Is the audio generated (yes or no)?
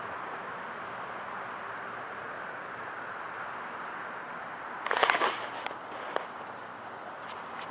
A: yes